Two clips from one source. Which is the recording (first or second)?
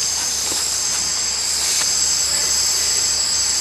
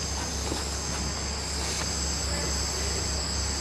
second